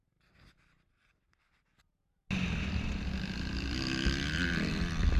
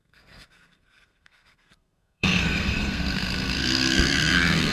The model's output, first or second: second